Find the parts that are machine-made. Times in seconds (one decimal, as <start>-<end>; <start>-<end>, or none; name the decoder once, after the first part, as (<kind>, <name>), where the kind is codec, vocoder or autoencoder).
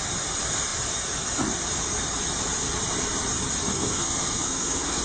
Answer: 3.7-5.0 (codec, SNAC)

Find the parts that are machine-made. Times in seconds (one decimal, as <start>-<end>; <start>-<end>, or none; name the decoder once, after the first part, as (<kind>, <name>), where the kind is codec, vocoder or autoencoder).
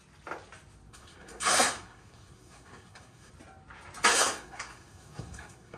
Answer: 0.9-3.3 (codec, SNAC); 4.1-5.8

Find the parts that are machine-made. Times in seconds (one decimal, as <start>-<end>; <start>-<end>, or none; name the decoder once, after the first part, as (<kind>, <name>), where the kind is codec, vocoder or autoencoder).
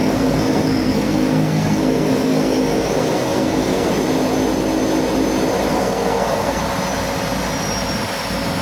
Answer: 0.0-3.9 (codec, SNAC); 5.7-6.6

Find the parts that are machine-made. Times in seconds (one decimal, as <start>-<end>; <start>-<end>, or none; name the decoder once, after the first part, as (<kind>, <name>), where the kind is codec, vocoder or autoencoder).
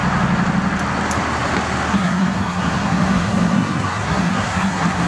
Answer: 1.9-5.1 (codec, SNAC)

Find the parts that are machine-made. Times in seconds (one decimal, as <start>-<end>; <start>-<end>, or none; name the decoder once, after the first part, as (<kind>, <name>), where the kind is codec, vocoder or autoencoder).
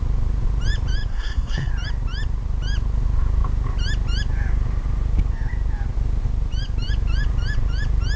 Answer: 1.1-1.7 (codec, SNAC)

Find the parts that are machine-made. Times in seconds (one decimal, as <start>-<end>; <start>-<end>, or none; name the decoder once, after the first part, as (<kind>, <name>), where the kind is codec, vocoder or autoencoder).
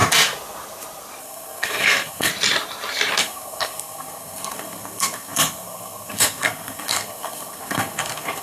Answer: 1.2-2.3 (codec, SNAC); 3.2-8.4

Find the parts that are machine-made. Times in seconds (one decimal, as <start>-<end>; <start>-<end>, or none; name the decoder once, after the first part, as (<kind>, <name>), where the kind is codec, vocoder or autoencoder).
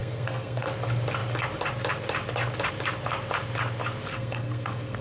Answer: 0.0-0.7 (codec, SNAC); 4.1-5.0